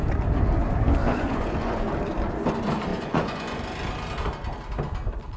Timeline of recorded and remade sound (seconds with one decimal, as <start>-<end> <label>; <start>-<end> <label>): 0.0-1.1 recorded; 1.1-1.9 remade; 1.9-2.9 recorded; 2.9-3.6 remade; 3.6-5.4 recorded